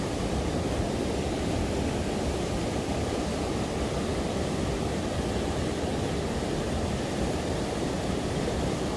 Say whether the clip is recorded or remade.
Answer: remade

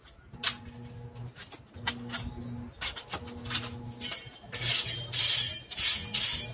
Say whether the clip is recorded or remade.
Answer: recorded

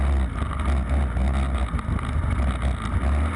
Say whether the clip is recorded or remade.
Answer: recorded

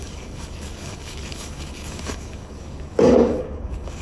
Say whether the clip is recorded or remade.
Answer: remade